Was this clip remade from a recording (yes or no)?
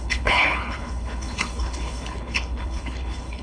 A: yes